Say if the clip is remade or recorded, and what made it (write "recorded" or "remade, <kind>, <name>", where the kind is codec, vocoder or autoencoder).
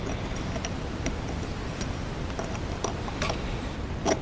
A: recorded